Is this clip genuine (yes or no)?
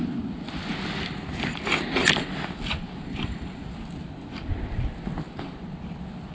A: yes